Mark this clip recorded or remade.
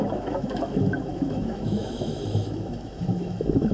remade